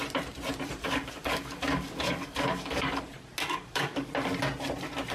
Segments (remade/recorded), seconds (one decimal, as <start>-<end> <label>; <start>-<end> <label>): 0.0-0.8 recorded; 0.8-3.0 remade; 3.0-3.4 recorded; 3.4-4.1 remade; 4.1-5.1 recorded